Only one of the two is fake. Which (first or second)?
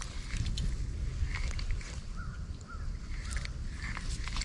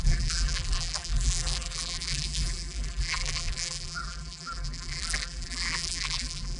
second